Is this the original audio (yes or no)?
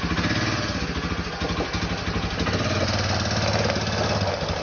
yes